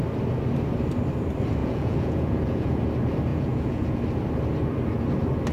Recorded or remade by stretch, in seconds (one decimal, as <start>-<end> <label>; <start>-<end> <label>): 0.0-1.6 recorded; 1.6-2.8 remade; 2.8-3.3 recorded; 3.3-4.0 remade; 4.0-5.5 recorded